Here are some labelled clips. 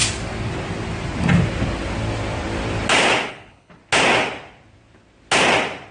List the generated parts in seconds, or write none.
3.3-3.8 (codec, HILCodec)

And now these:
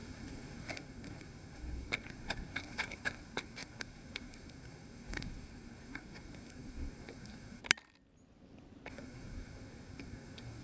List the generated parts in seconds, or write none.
0.0-7.6 (codec, SNAC); 8.9-10.6

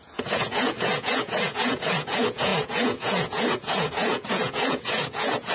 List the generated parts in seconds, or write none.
0.0-5.5 (vocoder, Vocos)

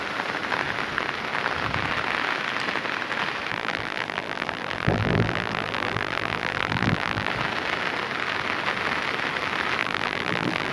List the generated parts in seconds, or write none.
3.5-7.3 (vocoder, BigVGAN v2); 9.8-10.7

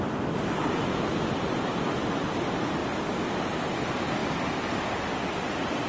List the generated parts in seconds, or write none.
none

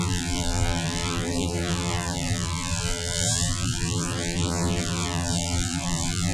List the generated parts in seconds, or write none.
0.0-6.3 (vocoder, BigVGAN v2)

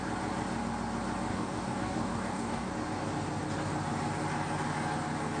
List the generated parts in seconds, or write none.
1.3-2.7 (codec, DAC)

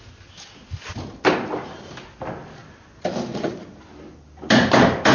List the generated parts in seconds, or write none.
3.3-3.8 (vocoder, Vocos)